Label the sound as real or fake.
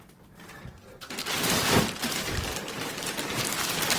fake